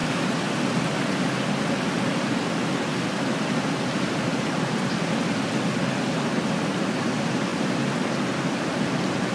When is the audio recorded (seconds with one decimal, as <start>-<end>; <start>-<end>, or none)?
0.0-4.3; 4.9-9.3